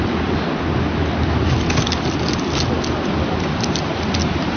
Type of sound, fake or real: real